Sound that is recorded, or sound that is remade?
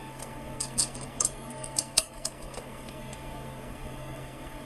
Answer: remade